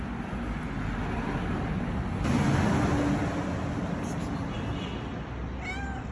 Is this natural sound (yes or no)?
yes